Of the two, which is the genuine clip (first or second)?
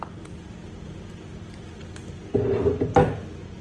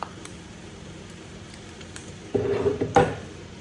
first